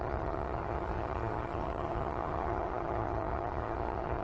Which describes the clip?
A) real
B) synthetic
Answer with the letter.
B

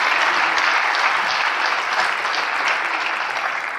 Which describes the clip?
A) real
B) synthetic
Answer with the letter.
A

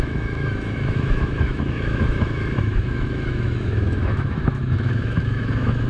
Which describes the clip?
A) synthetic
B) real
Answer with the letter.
A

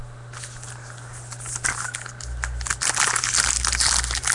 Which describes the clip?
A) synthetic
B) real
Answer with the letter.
B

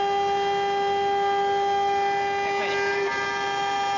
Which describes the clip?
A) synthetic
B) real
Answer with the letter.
B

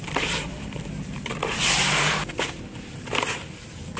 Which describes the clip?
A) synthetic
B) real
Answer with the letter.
B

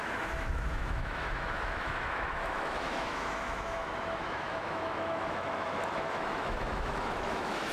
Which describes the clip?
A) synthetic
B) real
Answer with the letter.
A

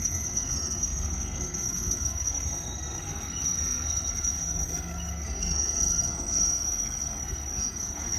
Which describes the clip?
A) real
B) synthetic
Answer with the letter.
B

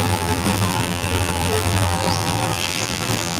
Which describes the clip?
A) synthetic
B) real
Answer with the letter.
A